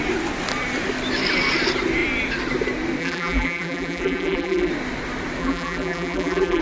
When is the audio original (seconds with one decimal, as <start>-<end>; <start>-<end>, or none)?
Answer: 0.0-3.0; 4.7-5.4